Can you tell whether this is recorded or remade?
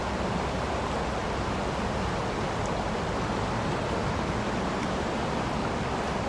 recorded